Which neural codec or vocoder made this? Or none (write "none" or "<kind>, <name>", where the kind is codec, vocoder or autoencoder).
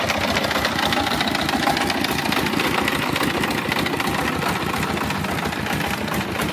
none